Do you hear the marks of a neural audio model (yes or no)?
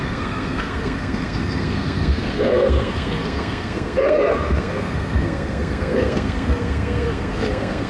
yes